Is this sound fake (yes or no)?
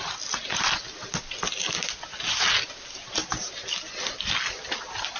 no